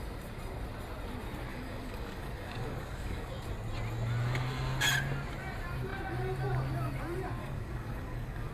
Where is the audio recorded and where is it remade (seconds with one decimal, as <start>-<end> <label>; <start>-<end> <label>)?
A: 0.0-1.5 recorded; 1.5-3.3 remade; 3.3-7.4 recorded; 7.4-8.5 remade